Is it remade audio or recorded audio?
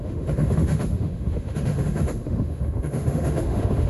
remade